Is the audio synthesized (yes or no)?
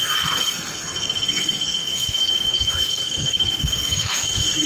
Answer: yes